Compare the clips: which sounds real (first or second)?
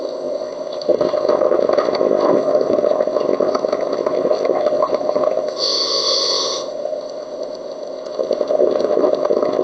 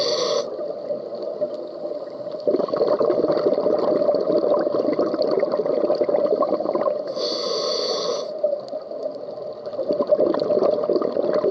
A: second